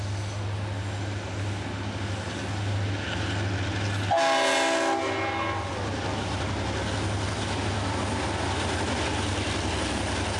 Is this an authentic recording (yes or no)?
yes